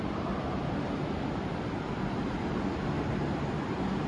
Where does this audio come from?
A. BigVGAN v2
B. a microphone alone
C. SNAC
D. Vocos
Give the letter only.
A